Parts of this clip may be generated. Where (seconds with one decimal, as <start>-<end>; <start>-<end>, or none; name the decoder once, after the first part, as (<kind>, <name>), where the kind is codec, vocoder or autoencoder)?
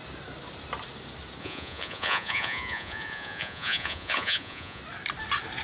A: 1.4-4.8 (vocoder, Vocos)